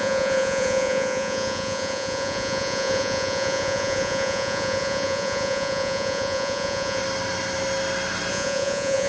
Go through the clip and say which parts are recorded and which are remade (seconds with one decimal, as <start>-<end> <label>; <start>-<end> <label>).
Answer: 0.0-7.0 remade; 7.0-8.3 recorded; 8.3-9.1 remade